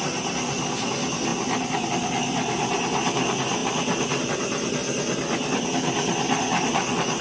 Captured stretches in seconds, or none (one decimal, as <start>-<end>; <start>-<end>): 0.0-7.2